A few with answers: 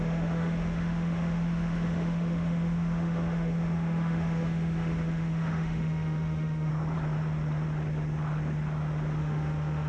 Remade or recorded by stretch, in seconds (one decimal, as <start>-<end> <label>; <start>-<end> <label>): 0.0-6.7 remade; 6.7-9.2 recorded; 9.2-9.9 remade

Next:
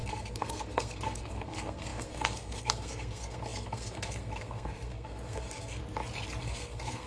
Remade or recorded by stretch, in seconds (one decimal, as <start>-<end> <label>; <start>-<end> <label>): 0.0-5.8 remade; 5.8-6.4 recorded; 6.4-7.1 remade

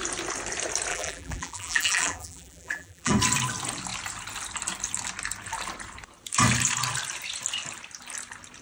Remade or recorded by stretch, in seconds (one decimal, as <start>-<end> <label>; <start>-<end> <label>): 0.0-0.9 recorded; 0.9-3.1 remade; 3.1-8.6 recorded

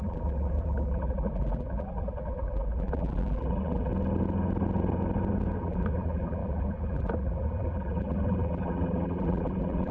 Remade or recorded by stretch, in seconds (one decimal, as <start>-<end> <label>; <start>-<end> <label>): 0.0-3.9 remade; 3.9-5.6 recorded; 5.6-9.9 remade

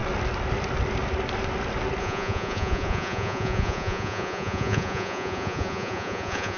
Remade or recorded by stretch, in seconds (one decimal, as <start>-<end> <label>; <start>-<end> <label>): 0.0-2.0 recorded; 2.0-6.6 remade

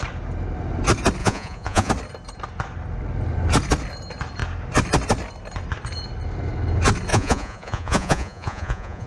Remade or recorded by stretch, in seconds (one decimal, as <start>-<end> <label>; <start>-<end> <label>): 0.0-1.2 recorded; 1.2-1.9 remade; 1.9-7.1 recorded; 7.1-9.1 remade

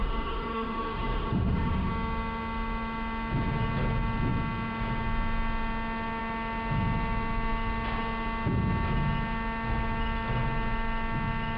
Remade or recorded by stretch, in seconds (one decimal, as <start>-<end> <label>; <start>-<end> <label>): 0.0-1.9 remade; 1.9-11.6 recorded